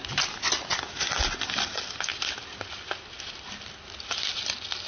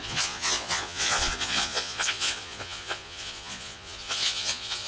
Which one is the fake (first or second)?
second